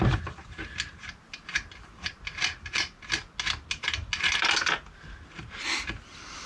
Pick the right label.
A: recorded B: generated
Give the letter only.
A